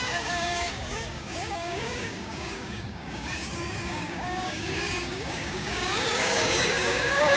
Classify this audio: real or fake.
fake